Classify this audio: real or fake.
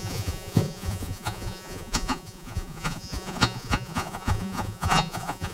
fake